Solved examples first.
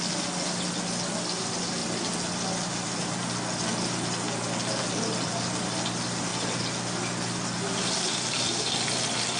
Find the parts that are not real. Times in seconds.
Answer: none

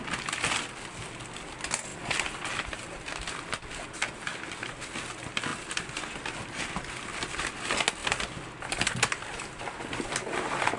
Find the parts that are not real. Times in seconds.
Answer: 1.9-3.3 (vocoder, BigVGAN v2)

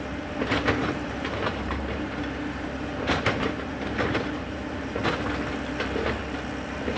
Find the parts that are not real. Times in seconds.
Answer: 0.8-5.0 (vocoder, BigVGAN v2)

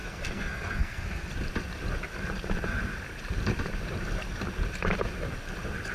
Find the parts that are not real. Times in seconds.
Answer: 0.0-1.3 (codec, SNAC)

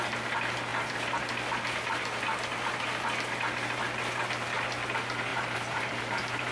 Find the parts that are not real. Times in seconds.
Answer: 5.3-6.5 (vocoder, BigVGAN v2)

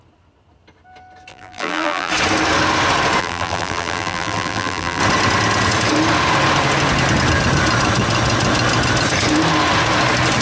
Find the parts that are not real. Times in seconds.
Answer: 1.3-2.1 (vocoder, BigVGAN v2); 3.2-5.0